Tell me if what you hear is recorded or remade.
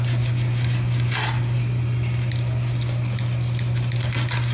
recorded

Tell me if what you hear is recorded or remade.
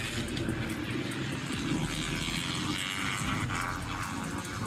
recorded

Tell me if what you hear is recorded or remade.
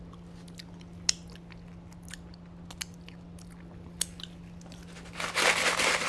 recorded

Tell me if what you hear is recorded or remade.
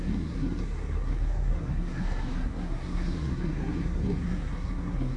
remade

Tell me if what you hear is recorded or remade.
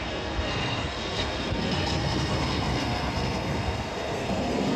remade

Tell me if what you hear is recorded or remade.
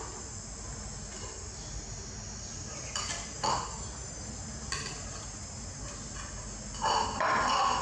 recorded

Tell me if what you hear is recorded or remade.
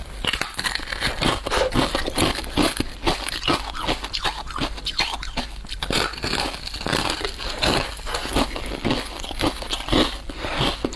recorded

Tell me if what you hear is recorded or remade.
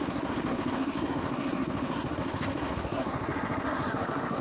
remade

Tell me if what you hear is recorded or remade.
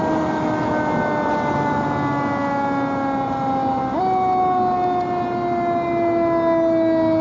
recorded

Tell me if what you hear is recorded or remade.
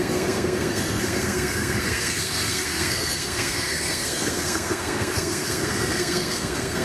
remade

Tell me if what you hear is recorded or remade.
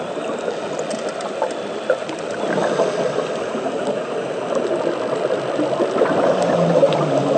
recorded